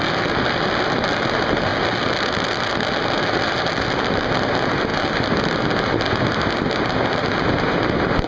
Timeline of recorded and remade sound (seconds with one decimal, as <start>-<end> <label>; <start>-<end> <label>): 0.0-8.3 recorded